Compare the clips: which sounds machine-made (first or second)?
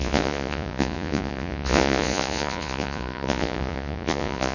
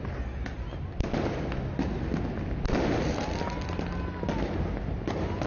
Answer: first